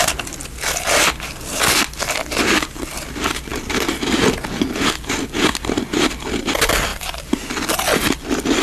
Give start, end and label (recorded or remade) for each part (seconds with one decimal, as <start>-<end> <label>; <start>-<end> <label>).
0.0-6.9 recorded; 6.9-7.5 remade; 7.5-8.6 recorded